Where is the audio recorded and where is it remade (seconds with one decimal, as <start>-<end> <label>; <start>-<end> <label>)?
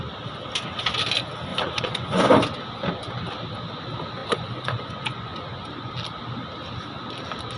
0.0-1.5 recorded; 1.5-2.2 remade; 2.2-4.2 recorded; 4.2-5.9 remade; 5.9-7.6 recorded